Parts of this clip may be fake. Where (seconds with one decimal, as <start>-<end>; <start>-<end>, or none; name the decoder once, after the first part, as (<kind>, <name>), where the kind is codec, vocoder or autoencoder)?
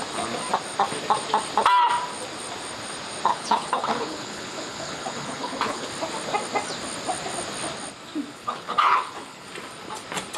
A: 3.3-5.9 (codec, HILCodec); 8.3-9.5